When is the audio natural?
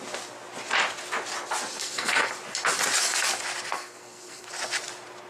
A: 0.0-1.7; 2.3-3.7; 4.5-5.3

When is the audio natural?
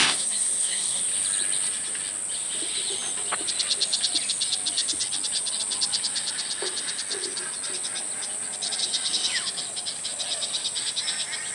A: 1.0-11.5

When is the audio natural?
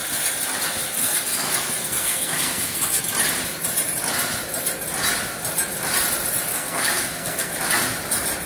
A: 0.0-1.0; 3.0-6.5; 7.5-8.5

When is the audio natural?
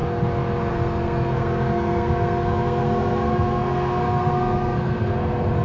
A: 0.0-0.7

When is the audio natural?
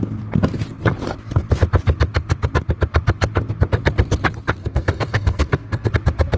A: 0.0-4.6; 5.9-6.4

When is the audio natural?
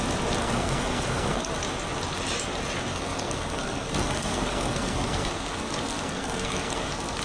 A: 0.0-0.4; 1.5-2.9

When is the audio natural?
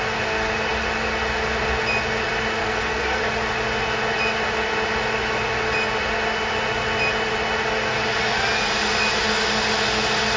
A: 0.0-2.6; 3.2-10.4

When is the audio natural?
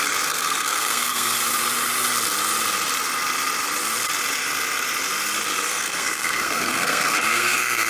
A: 1.4-5.7